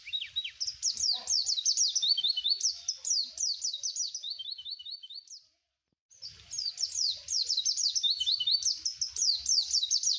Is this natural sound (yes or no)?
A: yes